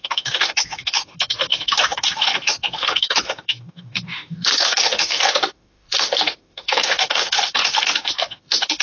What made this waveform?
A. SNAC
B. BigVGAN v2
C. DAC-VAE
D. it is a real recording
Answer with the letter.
C